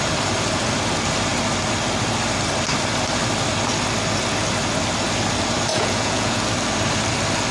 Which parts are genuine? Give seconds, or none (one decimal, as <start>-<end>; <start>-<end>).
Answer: 0.0-5.7; 6.4-7.5